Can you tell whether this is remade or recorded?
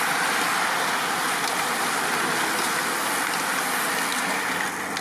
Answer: recorded